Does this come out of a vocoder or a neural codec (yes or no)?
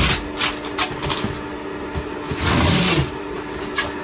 no